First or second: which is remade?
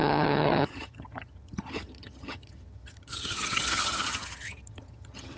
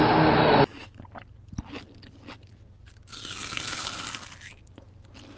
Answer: first